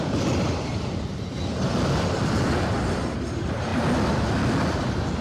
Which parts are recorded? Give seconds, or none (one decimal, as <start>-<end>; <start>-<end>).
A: 0.0-1.7; 2.7-5.2